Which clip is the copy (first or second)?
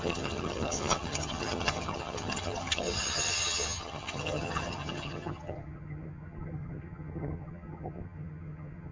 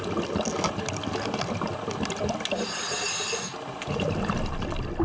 first